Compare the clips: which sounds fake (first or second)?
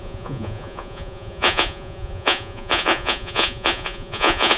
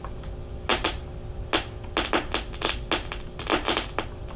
first